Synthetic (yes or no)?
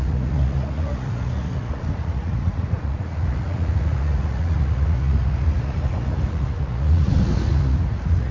yes